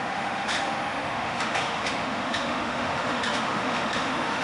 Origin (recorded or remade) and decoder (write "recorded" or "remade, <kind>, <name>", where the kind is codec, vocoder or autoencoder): remade, autoencoder, DAC-VAE